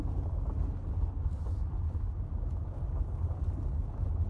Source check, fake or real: real